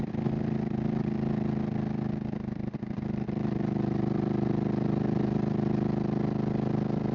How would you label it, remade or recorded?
recorded